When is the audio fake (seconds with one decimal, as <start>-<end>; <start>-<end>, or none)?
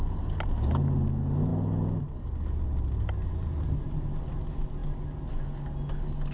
none